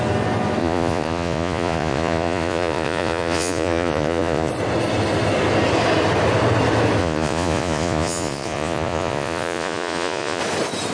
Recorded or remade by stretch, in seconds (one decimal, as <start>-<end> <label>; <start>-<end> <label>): 0.0-0.6 recorded; 0.6-4.5 remade; 4.5-7.0 recorded; 7.0-10.4 remade; 10.4-10.9 recorded